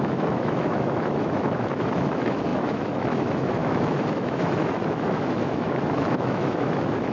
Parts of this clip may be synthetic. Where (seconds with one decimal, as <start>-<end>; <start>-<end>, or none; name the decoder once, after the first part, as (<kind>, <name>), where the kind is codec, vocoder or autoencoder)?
0.0-7.1 (autoencoder, DAC-VAE)